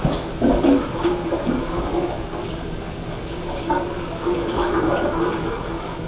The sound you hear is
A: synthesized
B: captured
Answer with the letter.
A